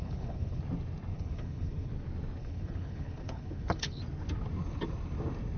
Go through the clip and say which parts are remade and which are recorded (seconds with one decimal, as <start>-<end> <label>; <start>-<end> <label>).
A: 0.0-0.6 remade; 0.6-1.1 recorded; 1.1-1.9 remade; 1.9-2.4 recorded; 2.4-4.0 remade; 4.0-5.6 recorded